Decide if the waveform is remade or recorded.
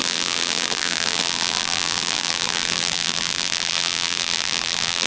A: remade